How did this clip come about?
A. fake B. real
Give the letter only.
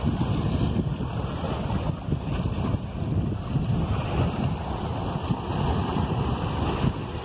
B